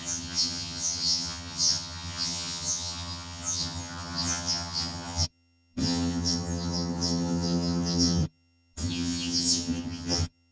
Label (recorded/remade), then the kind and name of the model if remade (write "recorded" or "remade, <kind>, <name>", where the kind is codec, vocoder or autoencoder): remade, vocoder, HiFi-GAN